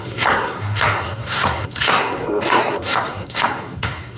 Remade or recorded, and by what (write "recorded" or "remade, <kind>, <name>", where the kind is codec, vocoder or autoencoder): remade, codec, SNAC